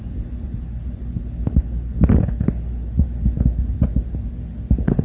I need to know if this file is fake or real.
real